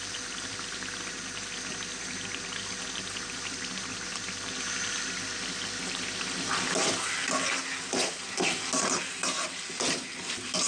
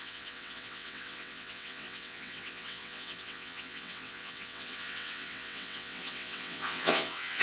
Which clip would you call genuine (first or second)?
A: first